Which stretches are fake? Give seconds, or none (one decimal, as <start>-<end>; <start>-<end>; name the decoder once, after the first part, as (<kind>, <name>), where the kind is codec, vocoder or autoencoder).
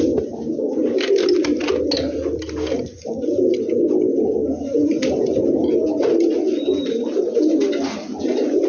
none